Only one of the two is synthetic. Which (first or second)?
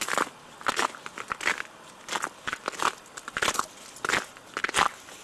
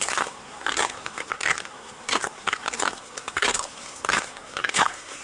second